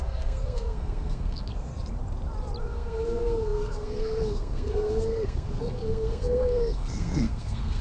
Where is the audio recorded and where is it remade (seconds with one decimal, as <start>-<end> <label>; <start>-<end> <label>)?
0.0-1.7 remade; 1.7-2.6 recorded; 2.6-7.8 remade